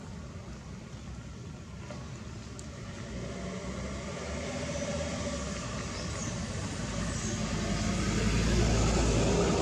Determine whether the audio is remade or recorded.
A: recorded